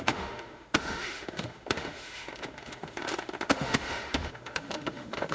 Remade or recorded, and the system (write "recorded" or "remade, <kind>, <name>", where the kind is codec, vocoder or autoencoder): remade, autoencoder, DAC-VAE